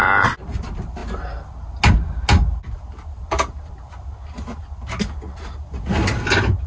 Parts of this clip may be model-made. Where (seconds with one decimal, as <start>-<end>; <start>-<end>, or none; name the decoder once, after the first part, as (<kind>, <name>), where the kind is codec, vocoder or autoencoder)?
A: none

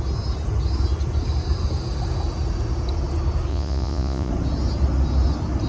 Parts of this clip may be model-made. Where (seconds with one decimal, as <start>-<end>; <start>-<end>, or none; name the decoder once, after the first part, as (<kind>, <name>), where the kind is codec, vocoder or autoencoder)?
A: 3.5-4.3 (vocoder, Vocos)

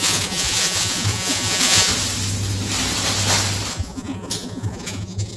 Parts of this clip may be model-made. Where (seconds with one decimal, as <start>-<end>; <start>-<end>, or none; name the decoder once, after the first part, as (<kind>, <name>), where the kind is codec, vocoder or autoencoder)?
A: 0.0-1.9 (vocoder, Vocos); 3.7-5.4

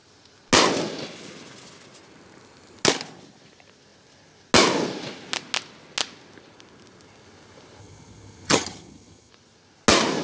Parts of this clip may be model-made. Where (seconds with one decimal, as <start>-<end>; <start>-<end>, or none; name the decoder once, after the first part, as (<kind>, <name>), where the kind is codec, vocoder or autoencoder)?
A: 7.8-9.3 (vocoder, HiFi-GAN)

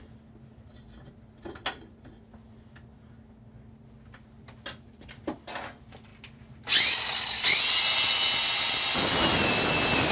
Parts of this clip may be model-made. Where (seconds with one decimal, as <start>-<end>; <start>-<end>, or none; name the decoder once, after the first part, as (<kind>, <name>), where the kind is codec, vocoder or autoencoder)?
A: none

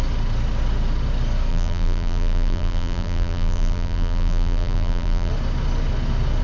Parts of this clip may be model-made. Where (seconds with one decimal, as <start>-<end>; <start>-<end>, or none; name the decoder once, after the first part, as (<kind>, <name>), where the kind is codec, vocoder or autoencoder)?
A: 1.5-5.3 (vocoder, BigVGAN v2)

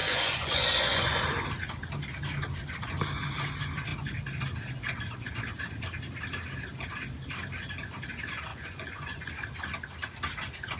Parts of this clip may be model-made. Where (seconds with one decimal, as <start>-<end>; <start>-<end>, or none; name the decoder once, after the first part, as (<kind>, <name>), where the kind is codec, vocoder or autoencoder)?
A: 0.0-1.2 (vocoder, Vocos); 8.5-9.3

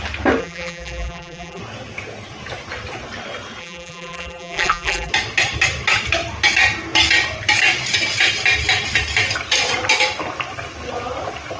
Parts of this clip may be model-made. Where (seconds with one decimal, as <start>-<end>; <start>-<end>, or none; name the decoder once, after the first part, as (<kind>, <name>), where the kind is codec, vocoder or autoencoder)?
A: 0.4-1.6 (vocoder, BigVGAN v2); 3.6-5.1